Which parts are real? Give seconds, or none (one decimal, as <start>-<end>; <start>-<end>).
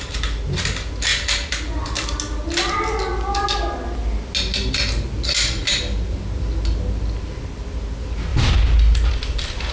0.0-9.7